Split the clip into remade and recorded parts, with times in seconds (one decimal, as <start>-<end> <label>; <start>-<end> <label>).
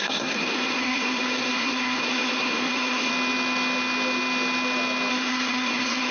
0.0-3.1 remade; 3.1-5.1 recorded; 5.1-6.1 remade